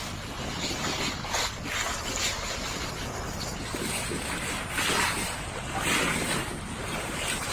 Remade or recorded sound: recorded